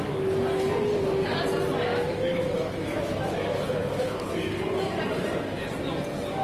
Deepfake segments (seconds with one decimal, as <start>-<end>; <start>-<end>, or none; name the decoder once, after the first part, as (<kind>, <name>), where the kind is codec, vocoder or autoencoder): 1.9-4.2 (autoencoder, DAC-VAE)